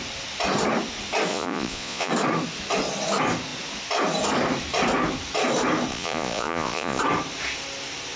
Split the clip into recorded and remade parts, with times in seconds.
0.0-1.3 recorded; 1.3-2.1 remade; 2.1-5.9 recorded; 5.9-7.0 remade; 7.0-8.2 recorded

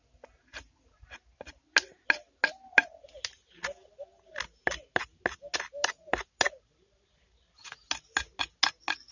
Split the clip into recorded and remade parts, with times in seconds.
0.0-9.1 recorded